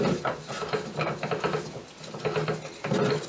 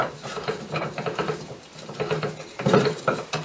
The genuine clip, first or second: first